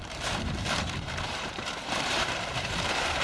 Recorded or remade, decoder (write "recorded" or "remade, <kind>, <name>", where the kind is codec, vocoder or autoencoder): remade, vocoder, BigVGAN v2